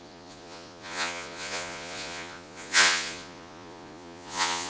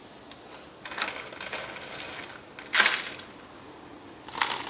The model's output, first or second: first